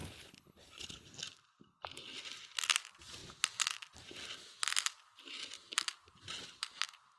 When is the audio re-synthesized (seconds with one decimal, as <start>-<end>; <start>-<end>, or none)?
0.0-1.1